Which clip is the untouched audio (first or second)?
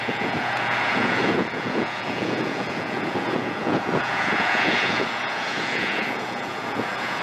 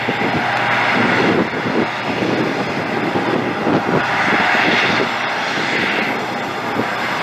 second